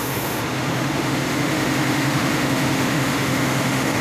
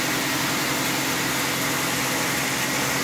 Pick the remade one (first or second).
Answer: first